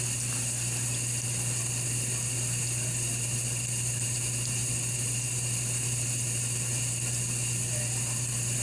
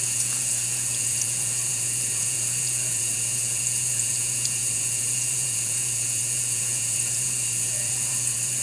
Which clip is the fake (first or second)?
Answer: second